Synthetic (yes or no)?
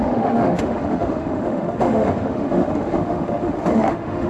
yes